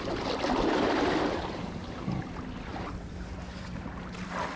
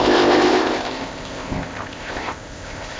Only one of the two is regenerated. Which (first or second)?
second